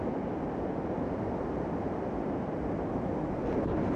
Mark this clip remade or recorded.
recorded